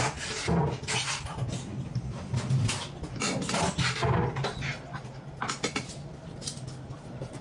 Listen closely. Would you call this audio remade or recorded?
recorded